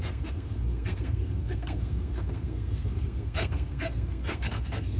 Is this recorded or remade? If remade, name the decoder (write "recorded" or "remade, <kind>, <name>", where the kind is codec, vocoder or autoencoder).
remade, codec, SNAC